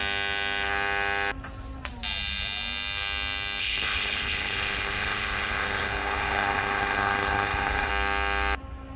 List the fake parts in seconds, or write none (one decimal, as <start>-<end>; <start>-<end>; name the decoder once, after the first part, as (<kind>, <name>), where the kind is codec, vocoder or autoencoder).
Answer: 3.6-7.9 (codec, HILCodec)